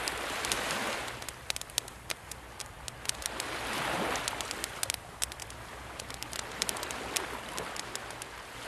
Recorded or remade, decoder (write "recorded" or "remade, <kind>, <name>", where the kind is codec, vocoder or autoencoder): recorded